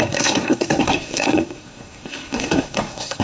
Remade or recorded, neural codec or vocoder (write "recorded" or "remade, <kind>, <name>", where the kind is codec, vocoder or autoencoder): remade, codec, SNAC